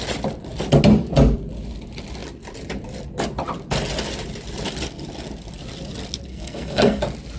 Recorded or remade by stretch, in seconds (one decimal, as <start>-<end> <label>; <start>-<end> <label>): 0.0-6.3 recorded; 6.3-7.0 remade; 7.0-7.4 recorded